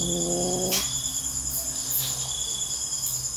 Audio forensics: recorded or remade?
recorded